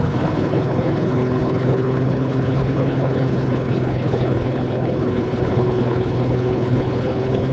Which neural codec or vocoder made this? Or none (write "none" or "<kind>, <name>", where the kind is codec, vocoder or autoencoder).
codec, HILCodec